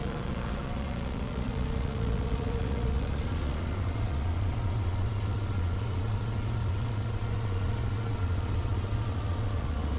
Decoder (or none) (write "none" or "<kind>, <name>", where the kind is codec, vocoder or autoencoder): vocoder, Vocos